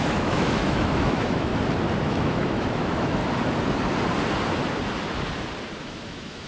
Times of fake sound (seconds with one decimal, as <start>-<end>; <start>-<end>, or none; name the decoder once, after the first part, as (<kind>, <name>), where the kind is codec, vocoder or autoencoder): 0.0-1.5 (autoencoder, DAC-VAE); 2.0-3.2; 5.8-6.5